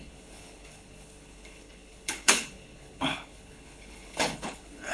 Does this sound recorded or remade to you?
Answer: remade